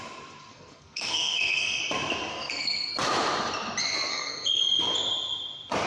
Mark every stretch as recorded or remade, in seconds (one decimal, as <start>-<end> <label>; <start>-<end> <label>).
0.0-0.5 recorded; 0.5-1.8 remade; 1.8-2.3 recorded; 2.3-2.9 remade; 2.9-4.1 recorded; 4.1-4.6 remade; 4.6-5.9 recorded